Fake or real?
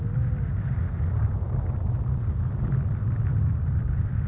real